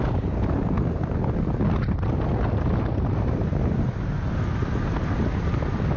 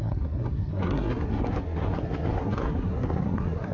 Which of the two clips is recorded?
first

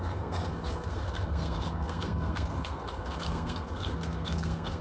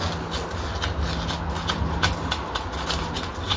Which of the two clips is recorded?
second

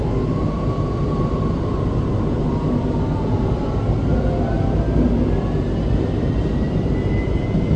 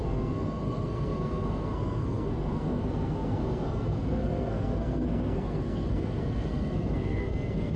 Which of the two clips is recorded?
first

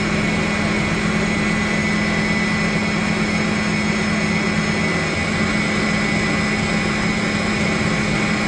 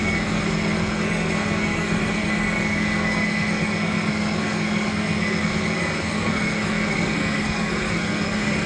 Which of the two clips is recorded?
first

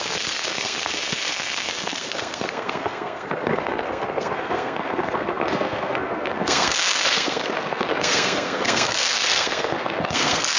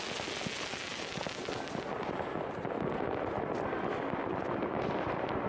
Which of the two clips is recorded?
second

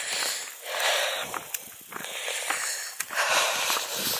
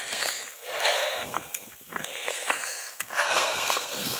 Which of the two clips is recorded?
first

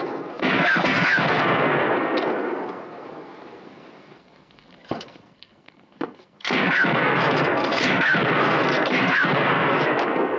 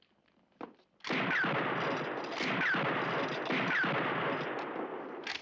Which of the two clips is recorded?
second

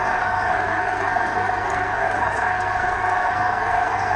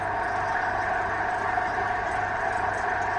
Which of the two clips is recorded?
second